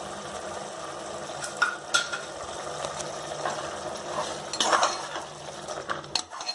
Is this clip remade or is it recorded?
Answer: recorded